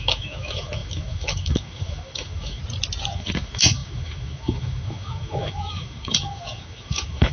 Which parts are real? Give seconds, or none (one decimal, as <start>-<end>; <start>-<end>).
2.6-3.1